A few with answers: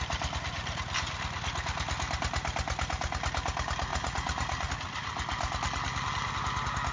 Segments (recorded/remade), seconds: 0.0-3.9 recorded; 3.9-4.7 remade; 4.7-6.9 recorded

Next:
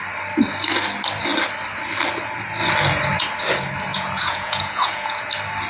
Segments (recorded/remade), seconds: 0.0-3.9 recorded; 3.9-5.3 remade; 5.3-5.7 recorded